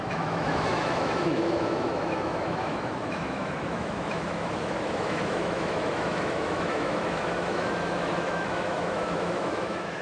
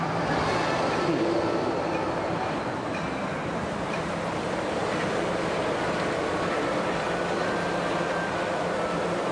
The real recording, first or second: second